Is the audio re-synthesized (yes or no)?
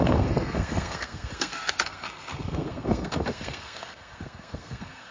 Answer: yes